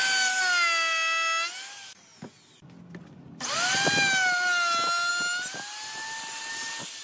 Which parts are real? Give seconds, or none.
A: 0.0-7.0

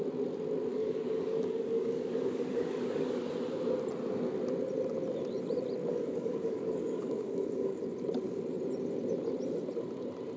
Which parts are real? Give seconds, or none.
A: 0.0-0.7; 3.2-5.9; 7.8-10.4

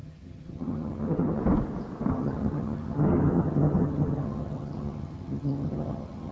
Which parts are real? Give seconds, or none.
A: 1.4-2.1